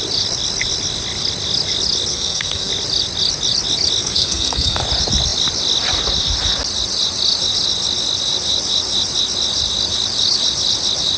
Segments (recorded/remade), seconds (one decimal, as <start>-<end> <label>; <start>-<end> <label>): 0.0-2.1 recorded; 2.1-2.7 remade; 2.7-4.0 recorded; 4.0-4.8 remade; 4.8-11.2 recorded